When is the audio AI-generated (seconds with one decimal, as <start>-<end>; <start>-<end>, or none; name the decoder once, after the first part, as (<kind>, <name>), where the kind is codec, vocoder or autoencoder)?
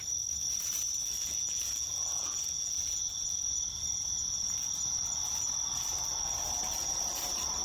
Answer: 1.0-3.0 (vocoder, Vocos)